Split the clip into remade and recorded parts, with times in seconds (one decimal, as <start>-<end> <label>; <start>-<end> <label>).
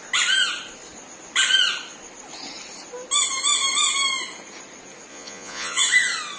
0.0-5.1 recorded; 5.1-5.8 remade; 5.8-6.4 recorded